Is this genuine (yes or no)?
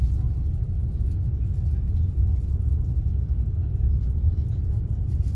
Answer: yes